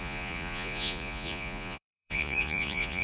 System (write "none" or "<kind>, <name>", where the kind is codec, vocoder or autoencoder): vocoder, Vocos